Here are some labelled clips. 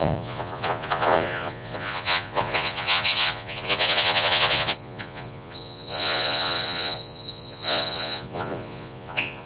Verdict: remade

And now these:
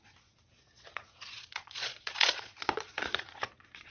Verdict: remade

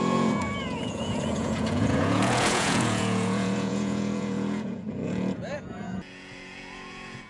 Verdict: remade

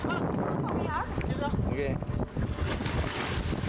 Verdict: recorded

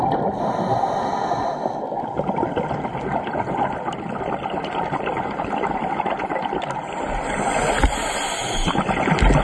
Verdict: recorded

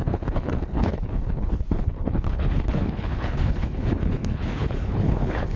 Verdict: remade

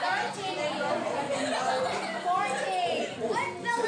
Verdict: recorded